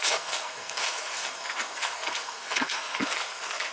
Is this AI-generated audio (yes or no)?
yes